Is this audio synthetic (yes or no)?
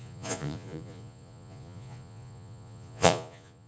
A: yes